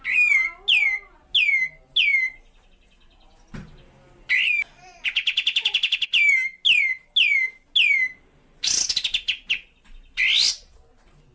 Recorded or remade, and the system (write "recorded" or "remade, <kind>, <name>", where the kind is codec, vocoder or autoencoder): recorded